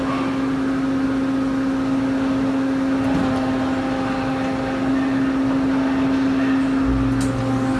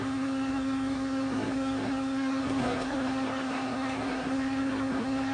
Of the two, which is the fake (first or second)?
second